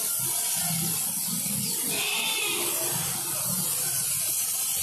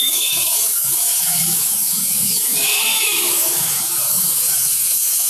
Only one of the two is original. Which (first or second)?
first